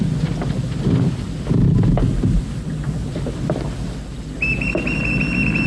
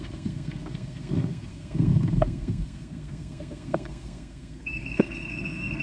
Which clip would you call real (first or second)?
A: first